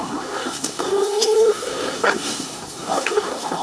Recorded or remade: remade